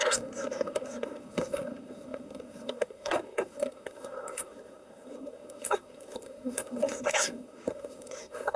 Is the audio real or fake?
fake